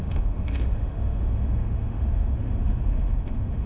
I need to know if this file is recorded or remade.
remade